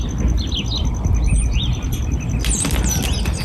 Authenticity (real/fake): real